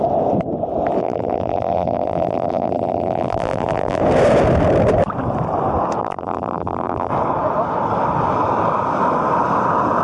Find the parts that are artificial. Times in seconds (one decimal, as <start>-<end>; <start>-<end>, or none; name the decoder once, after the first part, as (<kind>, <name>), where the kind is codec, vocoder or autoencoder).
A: 1.0-4.0 (vocoder, BigVGAN v2); 6.0-7.1

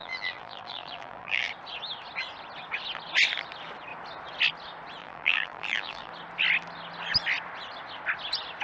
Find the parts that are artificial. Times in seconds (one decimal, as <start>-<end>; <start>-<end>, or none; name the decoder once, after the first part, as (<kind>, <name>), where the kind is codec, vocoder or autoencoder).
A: 0.0-1.5 (vocoder, BigVGAN v2); 5.0-6.1

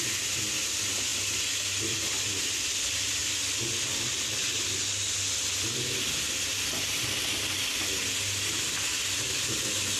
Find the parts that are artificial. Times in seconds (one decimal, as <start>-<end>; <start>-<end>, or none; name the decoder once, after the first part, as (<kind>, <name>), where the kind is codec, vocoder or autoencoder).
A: none

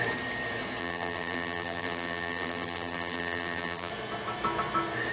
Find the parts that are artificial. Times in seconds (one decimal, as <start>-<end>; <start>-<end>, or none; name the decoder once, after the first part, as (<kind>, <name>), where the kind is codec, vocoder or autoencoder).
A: 0.8-3.9 (vocoder, BigVGAN v2)

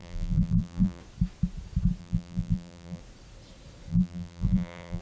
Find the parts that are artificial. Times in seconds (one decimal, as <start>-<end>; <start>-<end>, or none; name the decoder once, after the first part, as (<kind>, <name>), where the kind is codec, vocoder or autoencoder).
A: 0.0-1.0 (vocoder, BigVGAN v2); 2.0-3.0; 3.9-5.0